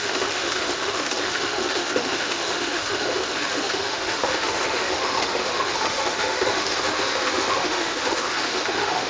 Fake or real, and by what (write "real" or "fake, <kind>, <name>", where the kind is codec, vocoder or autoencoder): fake, autoencoder, DAC-VAE